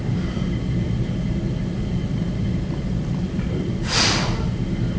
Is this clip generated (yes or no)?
yes